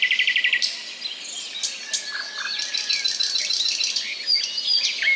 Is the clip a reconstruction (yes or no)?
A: no